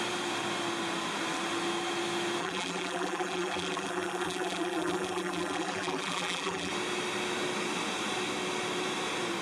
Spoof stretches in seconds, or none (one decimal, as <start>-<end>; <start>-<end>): 2.4-6.7